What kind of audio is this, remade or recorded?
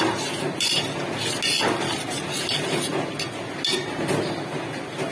recorded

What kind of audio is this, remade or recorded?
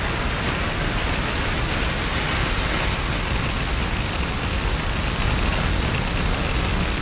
recorded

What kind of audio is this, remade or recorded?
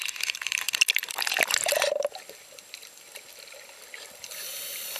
recorded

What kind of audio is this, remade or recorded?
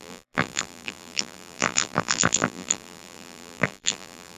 remade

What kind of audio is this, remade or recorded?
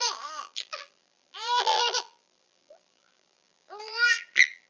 remade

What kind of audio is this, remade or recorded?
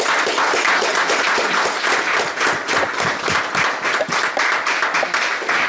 recorded